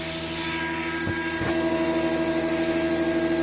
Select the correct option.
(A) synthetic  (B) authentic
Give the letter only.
B